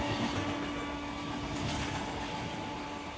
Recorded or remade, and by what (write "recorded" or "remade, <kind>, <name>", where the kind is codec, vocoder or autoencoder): recorded